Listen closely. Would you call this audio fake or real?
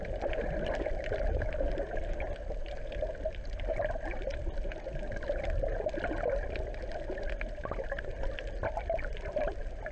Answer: real